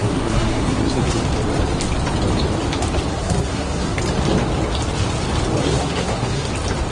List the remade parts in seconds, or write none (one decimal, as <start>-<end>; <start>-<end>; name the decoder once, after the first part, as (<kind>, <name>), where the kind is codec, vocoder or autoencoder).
0.0-1.2 (codec, SNAC); 3.1-4.0; 5.6-6.5